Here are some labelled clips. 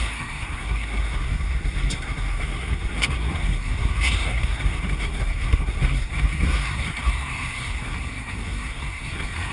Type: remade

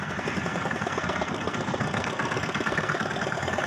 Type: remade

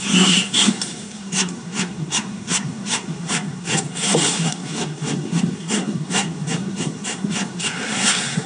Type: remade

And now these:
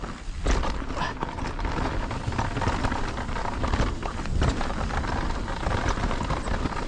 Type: recorded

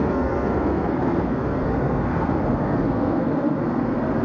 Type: remade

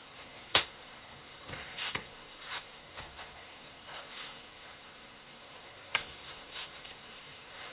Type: remade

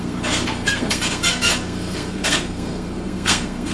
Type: remade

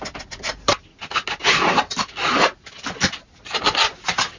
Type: recorded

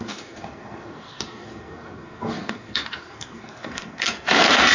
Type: remade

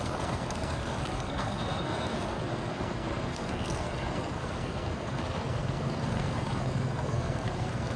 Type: remade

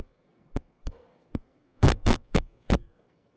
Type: remade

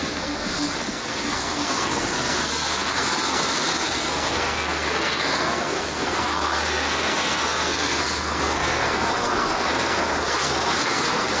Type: remade